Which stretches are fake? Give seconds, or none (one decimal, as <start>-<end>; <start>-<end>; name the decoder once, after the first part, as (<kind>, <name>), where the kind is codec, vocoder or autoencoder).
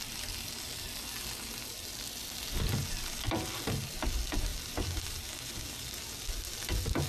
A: none